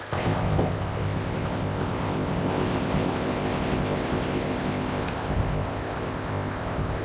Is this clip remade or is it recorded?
remade